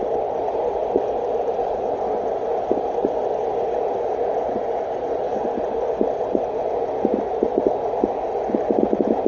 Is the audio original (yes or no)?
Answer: yes